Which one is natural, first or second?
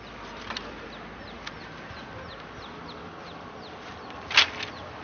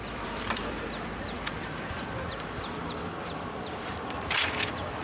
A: first